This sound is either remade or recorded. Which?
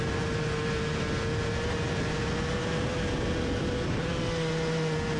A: recorded